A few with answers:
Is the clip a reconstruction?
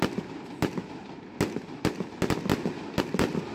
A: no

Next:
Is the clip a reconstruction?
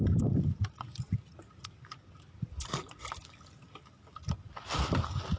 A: no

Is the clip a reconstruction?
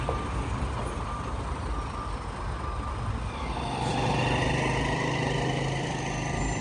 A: no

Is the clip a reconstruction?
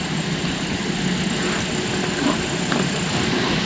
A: no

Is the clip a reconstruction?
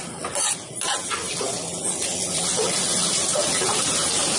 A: no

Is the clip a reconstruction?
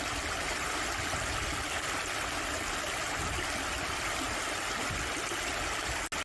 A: no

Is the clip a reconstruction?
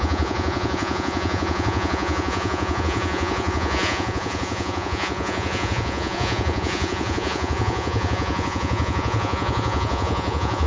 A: yes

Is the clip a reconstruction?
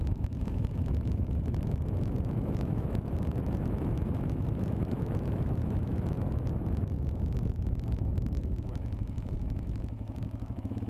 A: yes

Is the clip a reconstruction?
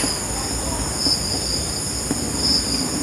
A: no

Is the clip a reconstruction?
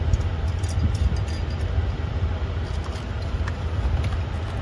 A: no